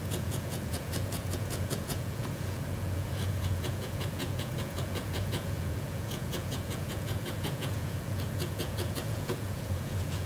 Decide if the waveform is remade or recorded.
remade